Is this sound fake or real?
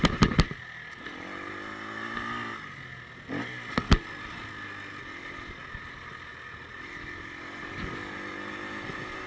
real